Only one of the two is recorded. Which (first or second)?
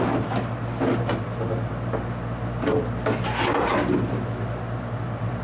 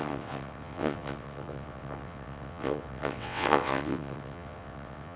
first